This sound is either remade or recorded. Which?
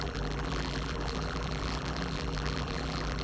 remade